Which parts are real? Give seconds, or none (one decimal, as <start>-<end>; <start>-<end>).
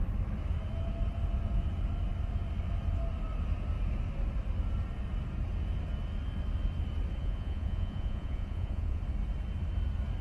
0.0-7.2; 9.0-10.2